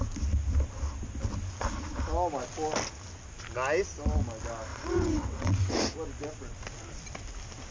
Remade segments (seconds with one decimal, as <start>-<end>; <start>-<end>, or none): 4.7-5.8